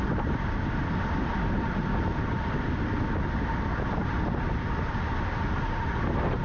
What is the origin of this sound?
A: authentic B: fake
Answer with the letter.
A